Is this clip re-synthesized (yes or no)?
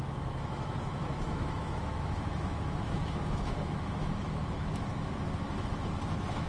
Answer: yes